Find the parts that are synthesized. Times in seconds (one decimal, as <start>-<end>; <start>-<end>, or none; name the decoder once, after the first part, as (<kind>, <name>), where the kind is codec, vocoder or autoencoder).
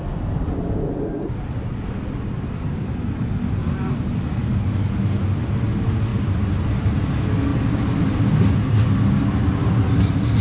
3.6-4.2 (vocoder, BigVGAN v2); 6.1-7.0